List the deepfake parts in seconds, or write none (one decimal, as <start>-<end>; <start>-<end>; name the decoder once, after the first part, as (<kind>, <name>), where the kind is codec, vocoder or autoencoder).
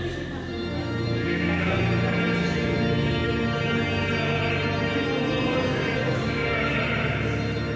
0.8-1.8 (codec, DAC); 6.0-6.8